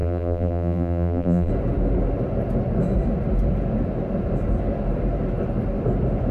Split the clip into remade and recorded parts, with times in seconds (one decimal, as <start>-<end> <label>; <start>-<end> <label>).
0.0-1.5 remade; 1.5-6.3 recorded